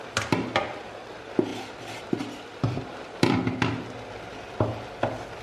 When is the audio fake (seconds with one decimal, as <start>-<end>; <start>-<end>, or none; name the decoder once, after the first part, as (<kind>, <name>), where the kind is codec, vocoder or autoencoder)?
1.5-2.8 (vocoder, BigVGAN v2)